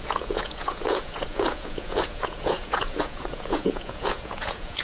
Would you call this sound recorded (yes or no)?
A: no